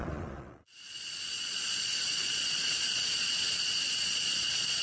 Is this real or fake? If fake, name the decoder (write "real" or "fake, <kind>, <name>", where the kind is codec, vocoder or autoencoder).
fake, vocoder, Vocos